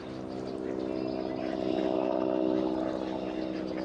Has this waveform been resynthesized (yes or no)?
no